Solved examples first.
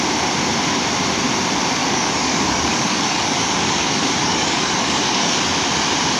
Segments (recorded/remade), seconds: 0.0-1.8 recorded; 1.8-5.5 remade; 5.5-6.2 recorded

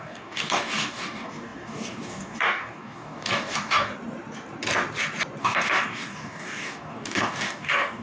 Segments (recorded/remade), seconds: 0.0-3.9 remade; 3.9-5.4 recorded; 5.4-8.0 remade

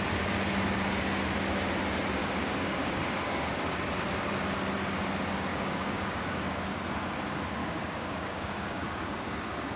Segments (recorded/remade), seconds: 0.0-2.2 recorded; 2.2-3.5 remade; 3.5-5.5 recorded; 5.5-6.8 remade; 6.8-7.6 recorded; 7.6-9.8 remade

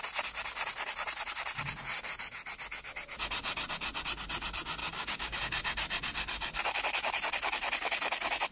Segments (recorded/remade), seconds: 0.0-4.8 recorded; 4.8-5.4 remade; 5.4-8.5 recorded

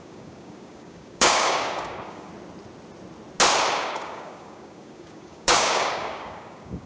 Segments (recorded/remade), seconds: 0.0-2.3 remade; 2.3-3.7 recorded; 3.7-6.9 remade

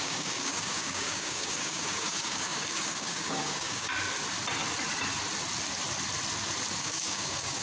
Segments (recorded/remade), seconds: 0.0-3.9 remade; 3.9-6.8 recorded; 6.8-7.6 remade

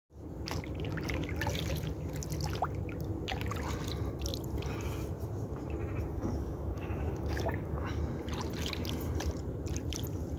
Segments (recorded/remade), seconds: 0.0-6.1 recorded; 6.1-8.0 remade; 8.0-10.4 recorded